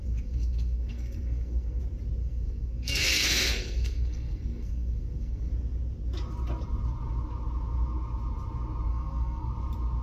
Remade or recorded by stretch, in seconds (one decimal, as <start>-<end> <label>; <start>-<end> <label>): 0.0-1.8 remade; 1.8-2.2 recorded; 2.2-5.5 remade; 5.5-8.9 recorded; 8.9-9.5 remade; 9.5-10.0 recorded

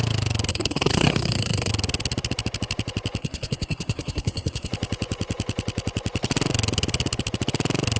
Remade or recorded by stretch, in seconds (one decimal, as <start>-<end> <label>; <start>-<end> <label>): 0.0-0.5 recorded; 0.5-1.7 remade; 1.7-3.2 recorded; 3.2-4.7 remade; 4.7-8.0 recorded